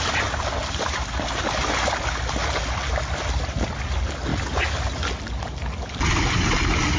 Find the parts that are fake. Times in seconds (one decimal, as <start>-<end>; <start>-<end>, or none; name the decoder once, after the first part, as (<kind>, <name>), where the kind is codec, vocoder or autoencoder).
none